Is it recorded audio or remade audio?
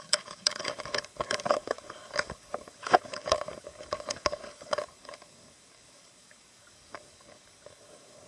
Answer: remade